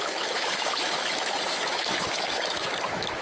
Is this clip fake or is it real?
fake